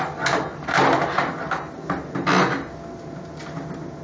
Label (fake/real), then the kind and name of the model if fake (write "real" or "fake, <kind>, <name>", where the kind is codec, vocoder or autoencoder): real